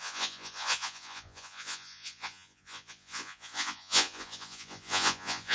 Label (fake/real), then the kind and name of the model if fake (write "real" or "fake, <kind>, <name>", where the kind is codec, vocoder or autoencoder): fake, vocoder, Vocos